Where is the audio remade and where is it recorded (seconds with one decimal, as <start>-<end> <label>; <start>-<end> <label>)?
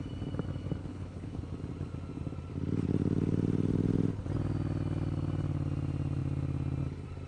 0.0-0.8 recorded; 0.8-1.4 remade; 1.4-7.3 recorded